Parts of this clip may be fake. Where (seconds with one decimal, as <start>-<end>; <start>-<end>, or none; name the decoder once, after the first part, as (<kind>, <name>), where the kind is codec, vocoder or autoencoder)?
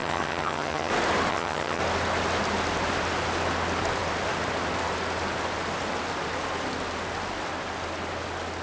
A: 0.0-0.9 (vocoder, HiFi-GAN); 1.3-1.8